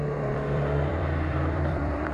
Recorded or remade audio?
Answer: remade